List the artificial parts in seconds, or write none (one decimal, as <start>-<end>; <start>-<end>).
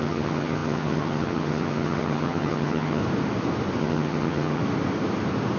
0.0-3.0; 3.8-4.6